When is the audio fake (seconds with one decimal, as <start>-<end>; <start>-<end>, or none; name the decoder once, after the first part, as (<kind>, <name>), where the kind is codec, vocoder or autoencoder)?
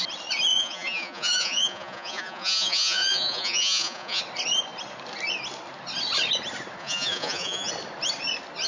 0.5-4.2 (vocoder, Vocos); 6.8-7.7